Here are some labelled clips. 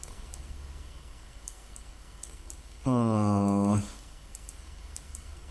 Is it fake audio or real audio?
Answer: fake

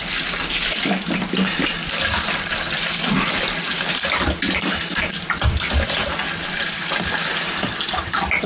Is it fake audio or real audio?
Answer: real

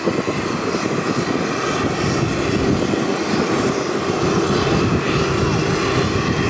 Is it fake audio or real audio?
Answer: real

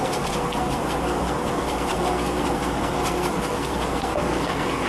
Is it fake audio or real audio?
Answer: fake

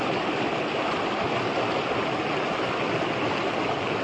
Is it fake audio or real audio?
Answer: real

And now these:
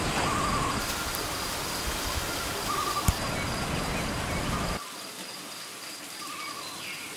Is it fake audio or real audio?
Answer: real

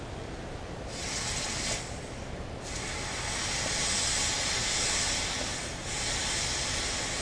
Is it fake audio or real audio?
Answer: real